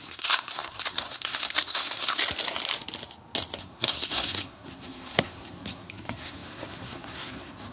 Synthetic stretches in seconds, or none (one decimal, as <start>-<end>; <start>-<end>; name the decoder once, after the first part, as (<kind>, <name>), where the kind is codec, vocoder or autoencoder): 0.0-2.2 (codec, SNAC); 3.6-7.7